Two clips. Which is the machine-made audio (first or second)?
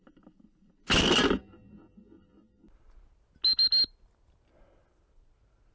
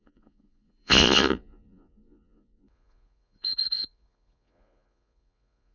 second